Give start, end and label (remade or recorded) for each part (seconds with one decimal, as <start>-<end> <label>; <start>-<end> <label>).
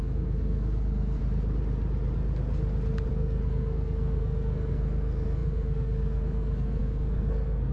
0.0-1.2 remade; 1.2-3.1 recorded; 3.1-7.7 remade